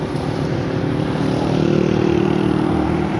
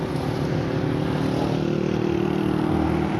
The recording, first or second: second